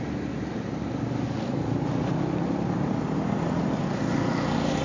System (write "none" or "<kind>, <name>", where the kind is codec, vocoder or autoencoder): none